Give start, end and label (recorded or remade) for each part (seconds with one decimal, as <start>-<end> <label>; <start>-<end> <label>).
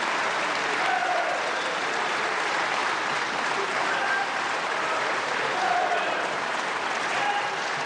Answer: 0.0-1.0 recorded; 1.0-2.1 remade; 2.1-2.8 recorded; 2.8-7.5 remade; 7.5-7.9 recorded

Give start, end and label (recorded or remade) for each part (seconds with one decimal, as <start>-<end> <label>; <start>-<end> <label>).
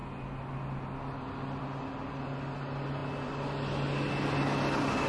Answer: 0.0-5.1 recorded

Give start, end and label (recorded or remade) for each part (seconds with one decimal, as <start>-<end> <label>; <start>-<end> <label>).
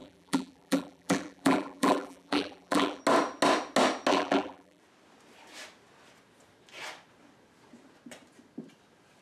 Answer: 0.0-3.0 remade; 3.0-4.1 recorded; 4.1-4.8 remade; 4.8-9.2 recorded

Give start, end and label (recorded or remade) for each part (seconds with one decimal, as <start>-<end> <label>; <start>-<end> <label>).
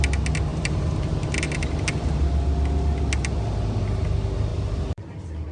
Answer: 0.0-4.5 recorded; 4.5-5.0 remade; 5.0-5.5 recorded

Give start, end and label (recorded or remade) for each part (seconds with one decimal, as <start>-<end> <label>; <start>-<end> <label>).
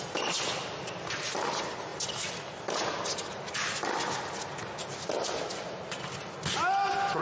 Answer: 0.0-7.2 recorded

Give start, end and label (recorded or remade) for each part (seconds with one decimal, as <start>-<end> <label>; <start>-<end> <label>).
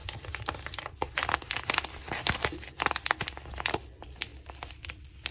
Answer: 0.0-5.3 remade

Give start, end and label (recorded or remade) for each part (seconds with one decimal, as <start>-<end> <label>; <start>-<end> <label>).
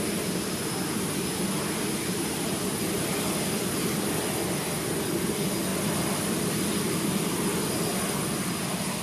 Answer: 0.0-3.1 recorded; 3.1-4.6 remade; 4.6-5.7 recorded; 5.7-7.7 remade; 7.7-9.0 recorded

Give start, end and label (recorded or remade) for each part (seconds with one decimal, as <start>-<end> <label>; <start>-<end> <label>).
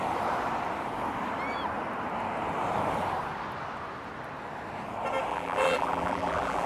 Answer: 0.0-5.3 recorded; 5.3-6.7 remade